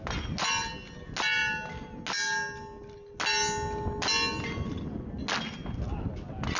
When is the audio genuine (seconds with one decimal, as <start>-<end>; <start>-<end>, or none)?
0.0-6.6